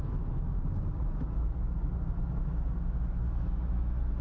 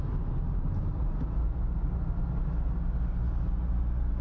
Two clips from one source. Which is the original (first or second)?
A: second